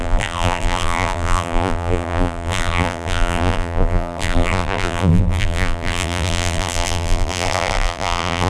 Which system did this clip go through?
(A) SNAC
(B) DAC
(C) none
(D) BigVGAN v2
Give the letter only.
D